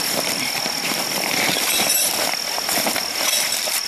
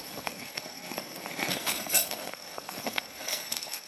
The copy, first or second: second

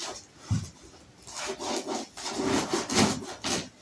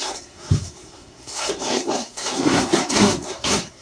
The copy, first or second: second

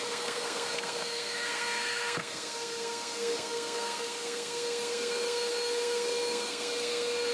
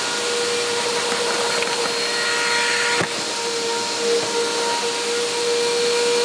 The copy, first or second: first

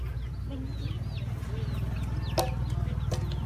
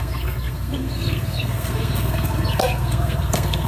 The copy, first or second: second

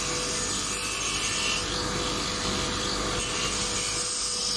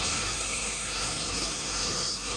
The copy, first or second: second